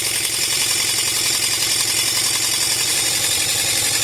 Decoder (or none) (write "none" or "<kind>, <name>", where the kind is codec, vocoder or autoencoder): vocoder, BigVGAN v2